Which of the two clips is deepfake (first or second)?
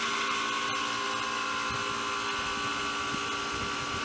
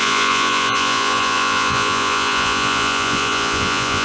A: second